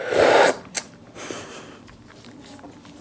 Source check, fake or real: fake